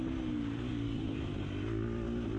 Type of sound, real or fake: real